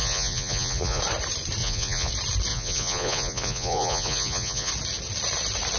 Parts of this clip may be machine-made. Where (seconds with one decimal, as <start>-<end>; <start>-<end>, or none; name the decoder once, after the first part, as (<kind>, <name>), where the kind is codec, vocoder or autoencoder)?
0.0-1.0 (vocoder, Vocos); 1.6-2.1; 2.5-4.7